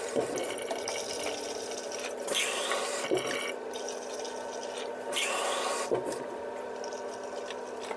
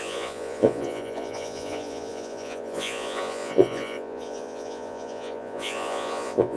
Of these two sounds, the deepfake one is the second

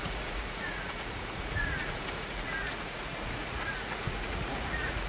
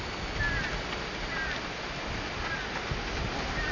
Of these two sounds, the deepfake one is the first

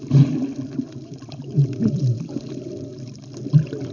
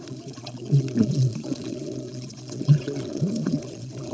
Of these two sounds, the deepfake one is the second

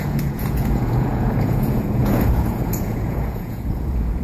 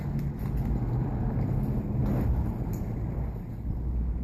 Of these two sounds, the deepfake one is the first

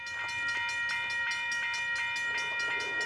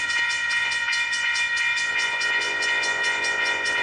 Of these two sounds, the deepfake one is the second